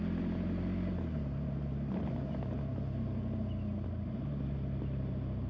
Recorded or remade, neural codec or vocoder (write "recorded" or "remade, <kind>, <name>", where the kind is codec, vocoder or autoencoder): recorded